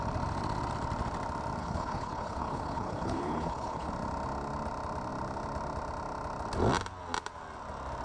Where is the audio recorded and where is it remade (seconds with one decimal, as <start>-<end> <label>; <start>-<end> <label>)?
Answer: 0.0-1.6 recorded; 1.6-3.9 remade; 3.9-8.0 recorded